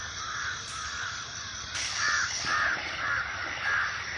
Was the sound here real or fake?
real